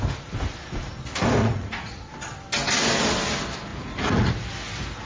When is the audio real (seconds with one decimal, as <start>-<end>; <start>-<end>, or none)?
0.0-1.4; 2.1-3.7; 4.3-5.1